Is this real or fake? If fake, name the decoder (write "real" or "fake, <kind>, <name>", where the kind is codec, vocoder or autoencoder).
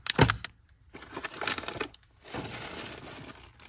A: real